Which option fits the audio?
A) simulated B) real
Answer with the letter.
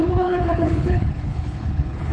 A